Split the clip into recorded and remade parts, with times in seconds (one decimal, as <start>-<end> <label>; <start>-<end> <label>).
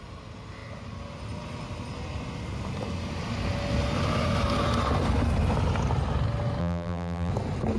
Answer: 0.0-6.6 recorded; 6.6-7.3 remade; 7.3-7.8 recorded